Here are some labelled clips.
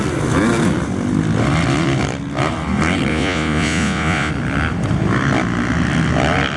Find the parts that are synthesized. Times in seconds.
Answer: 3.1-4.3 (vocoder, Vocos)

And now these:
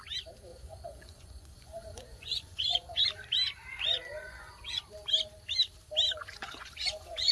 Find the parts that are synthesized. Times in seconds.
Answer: 0.5-3.0 (vocoder, Vocos); 3.7-4.8; 6.2-7.3